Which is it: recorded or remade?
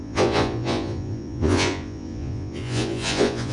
remade